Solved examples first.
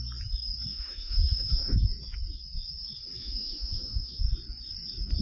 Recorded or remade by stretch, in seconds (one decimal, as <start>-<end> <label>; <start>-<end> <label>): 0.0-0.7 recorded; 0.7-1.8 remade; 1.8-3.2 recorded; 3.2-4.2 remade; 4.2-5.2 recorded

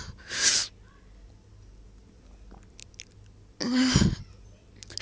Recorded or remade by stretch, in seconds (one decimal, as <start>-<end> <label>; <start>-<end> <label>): 0.0-5.0 recorded

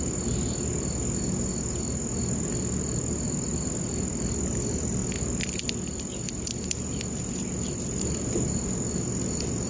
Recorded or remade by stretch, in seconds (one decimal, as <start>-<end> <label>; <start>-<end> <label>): 0.0-9.7 recorded

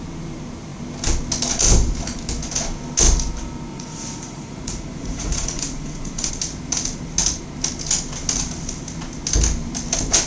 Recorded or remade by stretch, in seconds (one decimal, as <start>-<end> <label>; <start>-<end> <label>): 0.0-3.7 recorded; 3.7-6.3 remade; 6.3-10.3 recorded